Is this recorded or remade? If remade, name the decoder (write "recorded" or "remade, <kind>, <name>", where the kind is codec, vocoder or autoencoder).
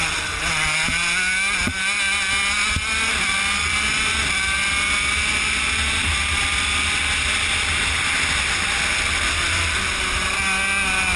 recorded